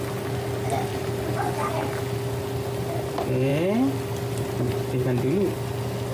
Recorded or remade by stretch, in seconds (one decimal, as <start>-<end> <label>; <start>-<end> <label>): 0.0-0.9 recorded; 0.9-1.5 remade; 1.5-6.1 recorded